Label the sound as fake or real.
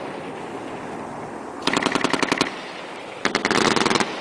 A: real